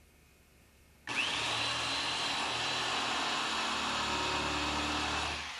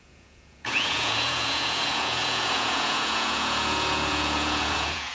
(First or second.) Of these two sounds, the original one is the first